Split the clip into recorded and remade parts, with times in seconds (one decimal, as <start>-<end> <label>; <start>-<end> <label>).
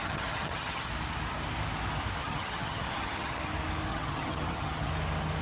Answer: 0.0-0.9 remade; 0.9-2.2 recorded; 2.2-3.5 remade; 3.5-3.9 recorded; 3.9-4.9 remade; 4.9-5.4 recorded